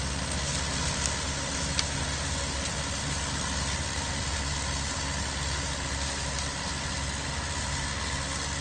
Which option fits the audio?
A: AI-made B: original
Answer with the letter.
B